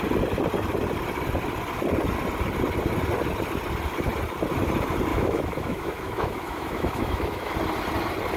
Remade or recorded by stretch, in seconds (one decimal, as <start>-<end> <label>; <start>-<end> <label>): 0.0-5.1 recorded; 5.1-7.5 remade; 7.5-8.4 recorded